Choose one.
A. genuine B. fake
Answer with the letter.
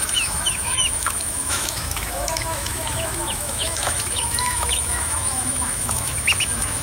B